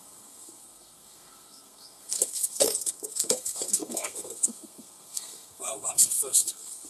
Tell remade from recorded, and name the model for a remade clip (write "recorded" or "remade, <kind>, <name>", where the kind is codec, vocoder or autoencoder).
remade, codec, SNAC